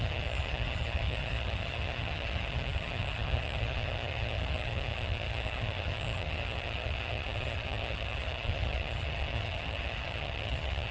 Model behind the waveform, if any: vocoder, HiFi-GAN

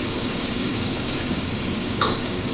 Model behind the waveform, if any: codec, DAC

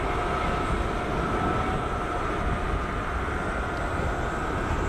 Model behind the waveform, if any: none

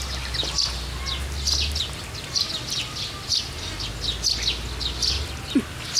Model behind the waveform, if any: none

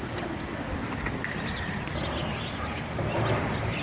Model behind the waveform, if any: vocoder, BigVGAN v2